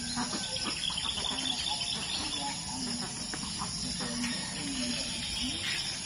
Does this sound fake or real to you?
real